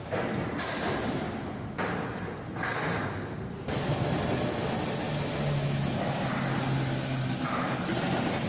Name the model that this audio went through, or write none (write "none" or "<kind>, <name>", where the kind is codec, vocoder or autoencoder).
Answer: none